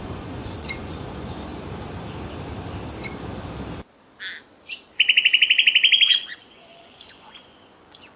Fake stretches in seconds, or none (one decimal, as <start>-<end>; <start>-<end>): 0.0-1.5; 6.1-8.2